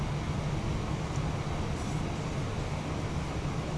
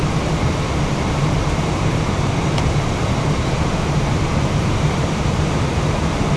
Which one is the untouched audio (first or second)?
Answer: first